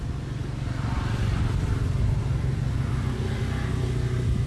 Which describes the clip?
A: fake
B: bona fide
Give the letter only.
B